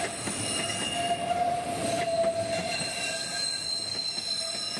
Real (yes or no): yes